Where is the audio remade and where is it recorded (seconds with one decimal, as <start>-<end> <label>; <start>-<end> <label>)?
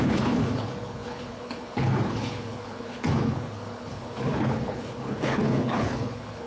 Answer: 0.0-6.5 remade